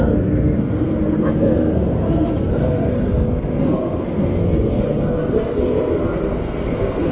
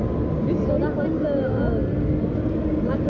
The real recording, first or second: second